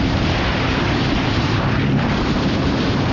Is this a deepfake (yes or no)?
yes